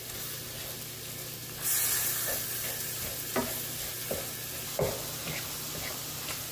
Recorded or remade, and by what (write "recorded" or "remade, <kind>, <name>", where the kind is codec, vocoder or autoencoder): recorded